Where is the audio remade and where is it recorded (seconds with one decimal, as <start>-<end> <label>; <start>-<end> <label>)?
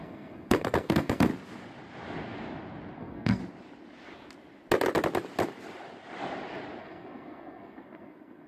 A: 0.0-1.3 remade; 1.3-3.0 recorded; 3.0-3.4 remade; 3.4-6.8 recorded; 6.8-8.5 remade